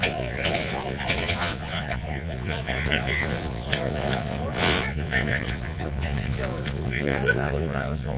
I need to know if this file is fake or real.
fake